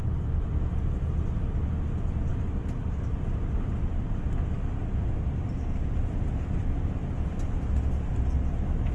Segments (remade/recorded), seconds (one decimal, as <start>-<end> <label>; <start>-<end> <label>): 0.0-8.9 recorded